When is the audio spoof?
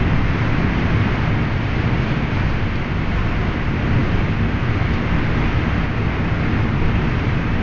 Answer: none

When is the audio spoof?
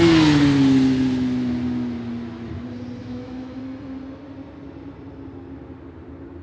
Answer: 3.0-3.6 (autoencoder, DAC-VAE)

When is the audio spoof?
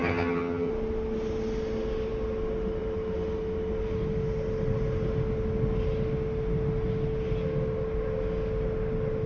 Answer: 0.0-0.7 (vocoder, HiFi-GAN)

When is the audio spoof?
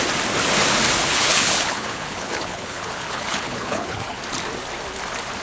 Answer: 1.0-4.2 (codec, HILCodec)